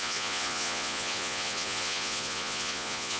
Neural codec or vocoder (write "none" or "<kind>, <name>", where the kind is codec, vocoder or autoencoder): vocoder, Vocos